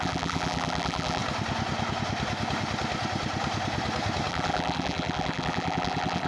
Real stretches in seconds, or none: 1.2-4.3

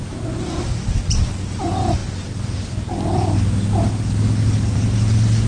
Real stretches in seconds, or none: 0.0-5.5

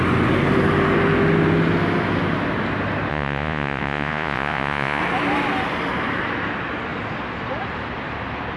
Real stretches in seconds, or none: 0.0-3.1; 5.0-8.6

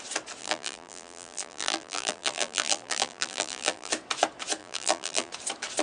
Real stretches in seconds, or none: 0.0-0.4; 3.9-4.6; 5.3-5.8

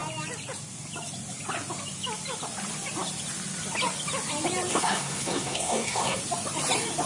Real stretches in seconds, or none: 0.0-4.7; 6.2-7.1

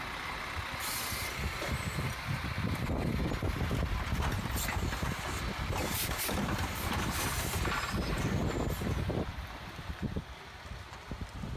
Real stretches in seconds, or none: 0.0-5.9; 7.6-9.3; 10.2-11.6